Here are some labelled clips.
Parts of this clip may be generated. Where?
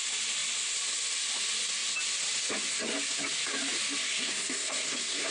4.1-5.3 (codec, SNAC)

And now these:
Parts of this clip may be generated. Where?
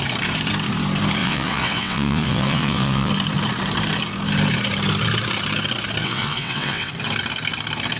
1.2-3.1 (vocoder, WaveNeXt); 6.0-6.9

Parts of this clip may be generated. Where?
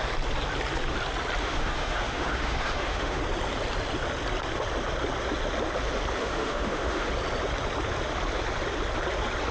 1.4-3.2 (autoencoder, DAC-VAE); 6.2-7.1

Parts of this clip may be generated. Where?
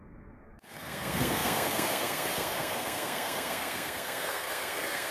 0.0-5.1 (codec, SNAC)